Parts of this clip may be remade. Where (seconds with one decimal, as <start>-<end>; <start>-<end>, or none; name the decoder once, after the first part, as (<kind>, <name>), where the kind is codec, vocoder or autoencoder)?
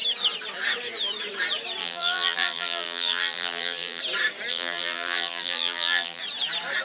1.8-4.0 (vocoder, BigVGAN v2); 4.5-6.2